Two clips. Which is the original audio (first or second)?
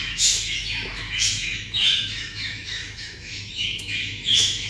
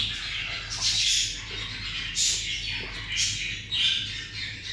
second